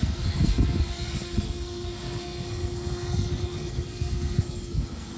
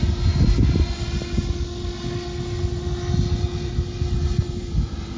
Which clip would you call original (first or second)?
second